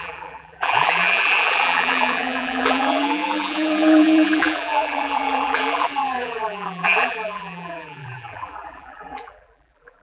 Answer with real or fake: fake